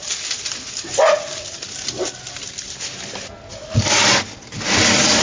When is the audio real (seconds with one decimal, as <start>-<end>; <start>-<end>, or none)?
0.0-5.2